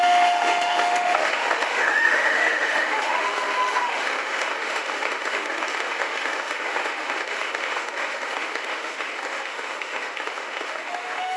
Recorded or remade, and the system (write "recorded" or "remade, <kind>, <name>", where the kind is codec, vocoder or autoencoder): remade, autoencoder, DAC-VAE